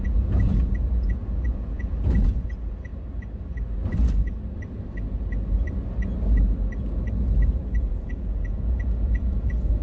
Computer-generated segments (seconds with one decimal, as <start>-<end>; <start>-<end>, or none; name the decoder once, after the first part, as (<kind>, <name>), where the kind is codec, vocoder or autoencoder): 0.0-2.9 (vocoder, Vocos); 7.7-9.8